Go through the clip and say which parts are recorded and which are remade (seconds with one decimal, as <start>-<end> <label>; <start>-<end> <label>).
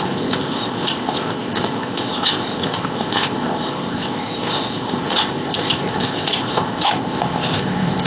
0.0-8.1 remade